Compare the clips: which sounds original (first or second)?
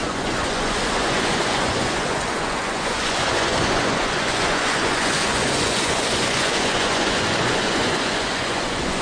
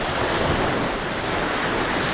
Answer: second